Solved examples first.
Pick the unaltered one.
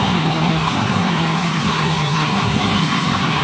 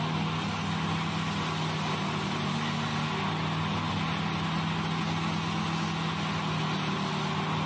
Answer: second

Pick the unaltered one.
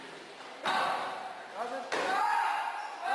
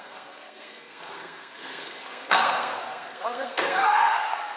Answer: first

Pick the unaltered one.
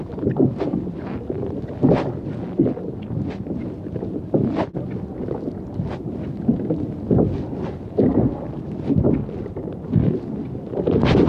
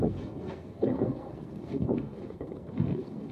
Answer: first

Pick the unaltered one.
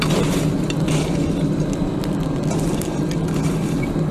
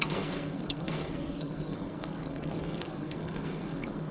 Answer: first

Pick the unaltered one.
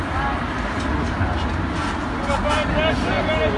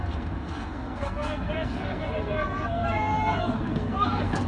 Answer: first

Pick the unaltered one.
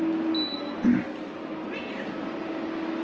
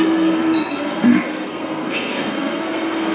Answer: first